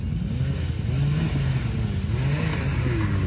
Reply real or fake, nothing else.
real